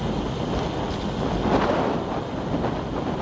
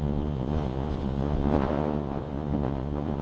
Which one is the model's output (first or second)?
second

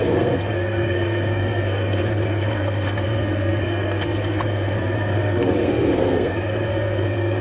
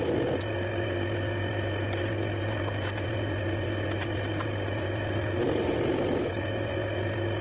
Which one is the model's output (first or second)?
first